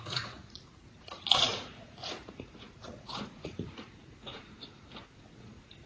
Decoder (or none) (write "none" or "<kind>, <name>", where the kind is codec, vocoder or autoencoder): vocoder, Vocos